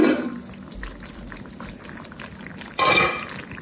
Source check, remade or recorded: recorded